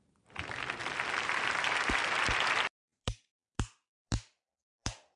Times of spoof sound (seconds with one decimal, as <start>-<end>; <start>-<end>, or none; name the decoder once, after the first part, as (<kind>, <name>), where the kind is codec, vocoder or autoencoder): none